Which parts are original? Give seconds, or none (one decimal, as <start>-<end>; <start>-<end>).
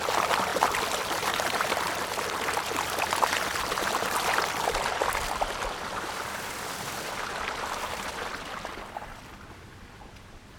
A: 0.0-10.6